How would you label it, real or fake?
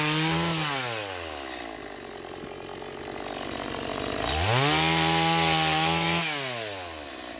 real